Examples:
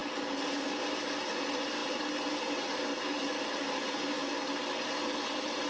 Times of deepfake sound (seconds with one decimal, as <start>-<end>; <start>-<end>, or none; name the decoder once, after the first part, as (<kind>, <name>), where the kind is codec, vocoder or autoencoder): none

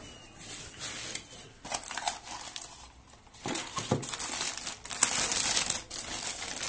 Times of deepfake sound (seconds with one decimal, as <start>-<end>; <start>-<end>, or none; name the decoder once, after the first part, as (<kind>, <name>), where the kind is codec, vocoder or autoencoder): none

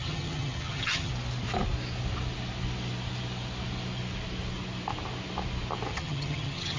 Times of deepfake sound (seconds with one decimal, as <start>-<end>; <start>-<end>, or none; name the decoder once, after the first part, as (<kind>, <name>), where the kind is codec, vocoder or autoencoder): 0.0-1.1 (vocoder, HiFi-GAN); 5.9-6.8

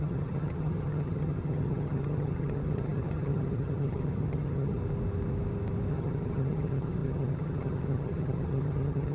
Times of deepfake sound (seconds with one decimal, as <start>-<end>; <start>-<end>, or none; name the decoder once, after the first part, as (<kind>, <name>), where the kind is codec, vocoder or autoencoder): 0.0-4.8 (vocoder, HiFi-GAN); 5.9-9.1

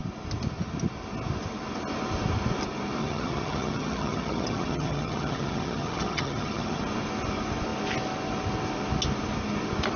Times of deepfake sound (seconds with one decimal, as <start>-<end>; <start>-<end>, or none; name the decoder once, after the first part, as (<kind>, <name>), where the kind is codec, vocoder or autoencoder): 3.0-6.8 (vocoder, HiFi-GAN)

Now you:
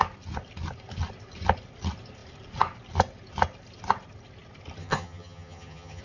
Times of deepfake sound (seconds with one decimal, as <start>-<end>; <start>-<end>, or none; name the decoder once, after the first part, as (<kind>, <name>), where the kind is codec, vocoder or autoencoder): 4.8-6.0 (vocoder, HiFi-GAN)

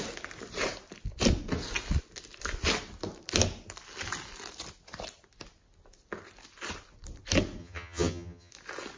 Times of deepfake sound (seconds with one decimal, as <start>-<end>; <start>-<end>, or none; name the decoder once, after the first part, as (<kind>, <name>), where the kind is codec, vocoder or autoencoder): 7.6-8.5 (vocoder, HiFi-GAN)